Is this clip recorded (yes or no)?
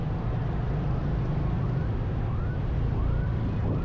yes